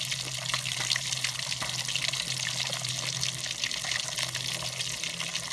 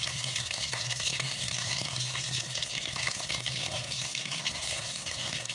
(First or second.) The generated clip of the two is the second